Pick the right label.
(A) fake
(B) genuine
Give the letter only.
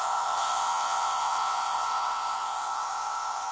A